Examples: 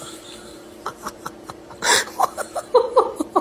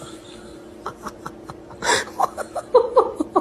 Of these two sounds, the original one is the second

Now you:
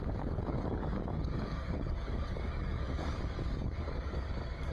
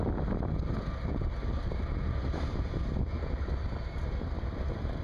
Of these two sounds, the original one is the second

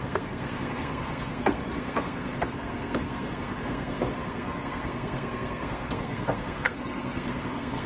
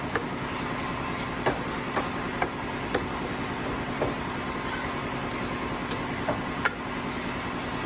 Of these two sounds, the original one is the second